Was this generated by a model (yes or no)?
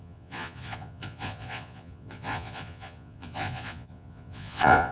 yes